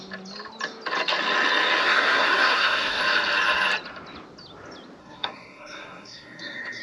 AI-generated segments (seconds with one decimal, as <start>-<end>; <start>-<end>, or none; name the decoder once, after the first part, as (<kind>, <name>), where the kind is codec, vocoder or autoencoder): 1.8-3.0 (codec, SNAC); 5.0-6.8